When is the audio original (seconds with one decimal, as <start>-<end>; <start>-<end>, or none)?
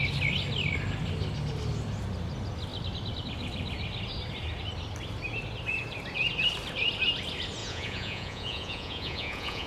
0.0-7.6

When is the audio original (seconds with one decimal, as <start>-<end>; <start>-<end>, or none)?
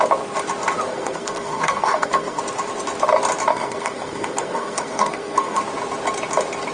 0.0-0.9; 2.4-3.5; 5.6-6.7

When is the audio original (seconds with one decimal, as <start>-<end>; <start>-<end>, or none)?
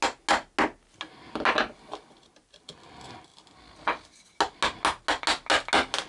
0.0-6.1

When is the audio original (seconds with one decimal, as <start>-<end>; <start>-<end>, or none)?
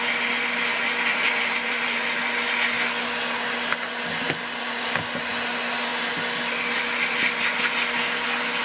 0.0-1.1; 2.2-8.6